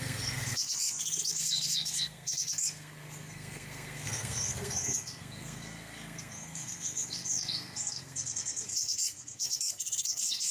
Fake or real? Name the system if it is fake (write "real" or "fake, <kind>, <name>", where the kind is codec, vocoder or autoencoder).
fake, codec, SNAC